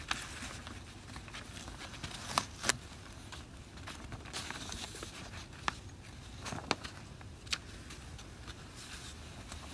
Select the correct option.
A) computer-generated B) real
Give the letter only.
B